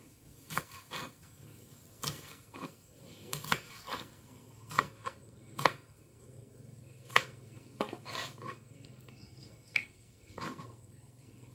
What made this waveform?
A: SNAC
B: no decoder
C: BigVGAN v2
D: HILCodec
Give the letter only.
A